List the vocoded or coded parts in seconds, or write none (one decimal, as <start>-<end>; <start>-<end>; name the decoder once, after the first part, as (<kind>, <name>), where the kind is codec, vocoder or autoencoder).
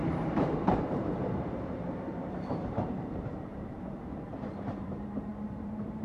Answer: 0.0-6.0 (vocoder, BigVGAN v2)